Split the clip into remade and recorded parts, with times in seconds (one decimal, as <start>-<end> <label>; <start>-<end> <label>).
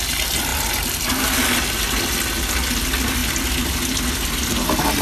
0.0-5.0 recorded